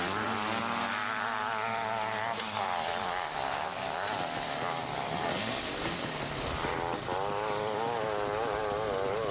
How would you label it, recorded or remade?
recorded